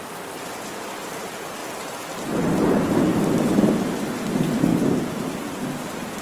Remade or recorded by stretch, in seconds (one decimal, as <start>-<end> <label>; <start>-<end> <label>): 0.0-3.1 recorded; 3.1-4.1 remade; 4.1-6.2 recorded